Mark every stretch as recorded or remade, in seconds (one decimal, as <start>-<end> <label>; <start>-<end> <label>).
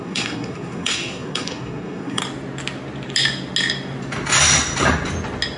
0.0-2.2 remade; 2.2-5.6 recorded